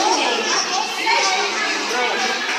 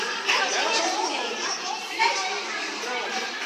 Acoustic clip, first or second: first